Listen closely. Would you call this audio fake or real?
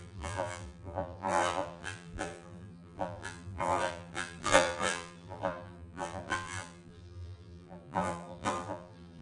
fake